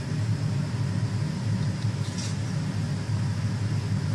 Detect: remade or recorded recorded